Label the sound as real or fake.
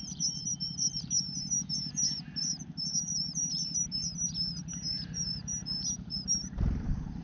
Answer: fake